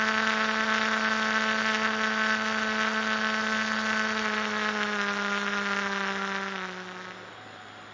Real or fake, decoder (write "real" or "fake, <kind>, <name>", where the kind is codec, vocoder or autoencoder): real